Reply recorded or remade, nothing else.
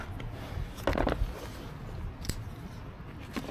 recorded